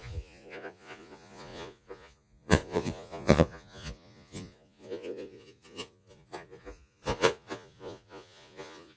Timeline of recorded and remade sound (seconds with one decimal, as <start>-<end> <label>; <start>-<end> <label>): 0.0-9.0 remade